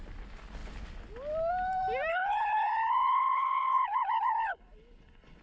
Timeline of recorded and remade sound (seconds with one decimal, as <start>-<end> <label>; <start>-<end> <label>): 0.0-2.1 recorded; 2.1-5.4 remade